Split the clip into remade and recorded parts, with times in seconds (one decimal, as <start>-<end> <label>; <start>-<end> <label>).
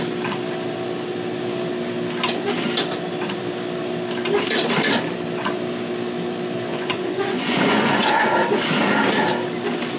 0.0-6.7 recorded; 6.7-8.6 remade; 8.6-10.0 recorded